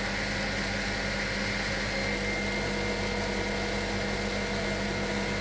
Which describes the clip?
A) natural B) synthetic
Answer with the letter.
A